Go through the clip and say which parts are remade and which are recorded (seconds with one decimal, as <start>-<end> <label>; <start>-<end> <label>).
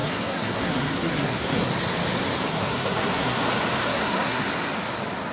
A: 0.0-1.7 remade; 1.7-2.5 recorded; 2.5-3.4 remade; 3.4-3.8 recorded; 3.8-4.5 remade; 4.5-5.3 recorded